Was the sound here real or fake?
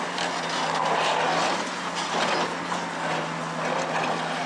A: real